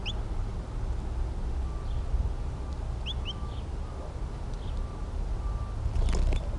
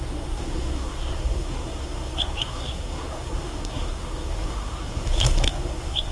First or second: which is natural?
first